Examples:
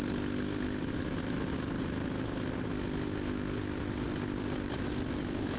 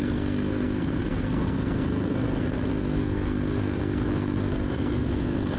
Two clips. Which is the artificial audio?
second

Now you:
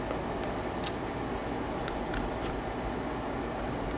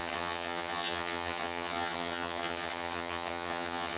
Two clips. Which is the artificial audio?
second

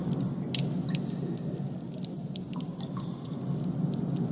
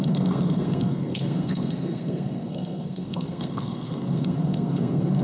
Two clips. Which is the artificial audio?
second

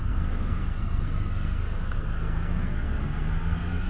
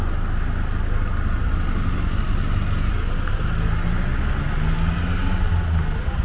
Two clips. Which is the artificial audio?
first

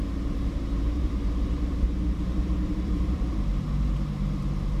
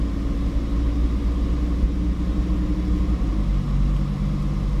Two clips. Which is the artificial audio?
first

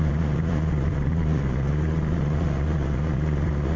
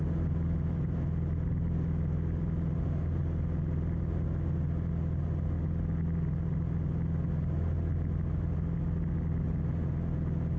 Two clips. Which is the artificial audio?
first